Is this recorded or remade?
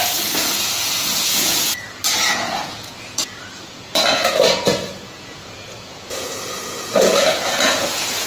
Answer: remade